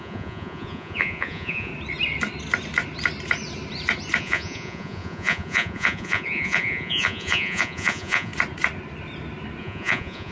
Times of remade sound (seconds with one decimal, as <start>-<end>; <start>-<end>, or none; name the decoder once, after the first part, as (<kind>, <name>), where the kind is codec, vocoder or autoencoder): 0.0-1.7 (vocoder, Vocos); 4.2-8.3; 9.6-10.3